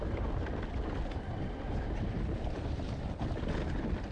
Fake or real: real